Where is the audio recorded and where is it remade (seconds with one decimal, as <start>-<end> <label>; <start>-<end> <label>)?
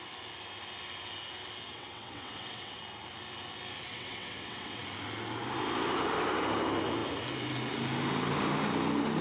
0.0-1.7 recorded; 1.7-2.8 remade; 2.8-3.9 recorded; 3.9-4.8 remade; 4.8-9.2 recorded